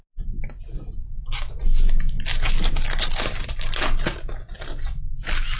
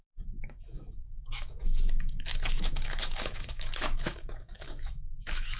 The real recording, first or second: first